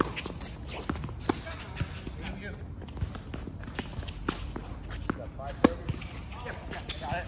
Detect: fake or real real